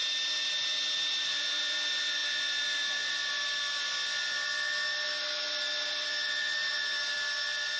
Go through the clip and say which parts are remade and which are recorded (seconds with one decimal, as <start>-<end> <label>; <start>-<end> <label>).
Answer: 0.0-7.8 recorded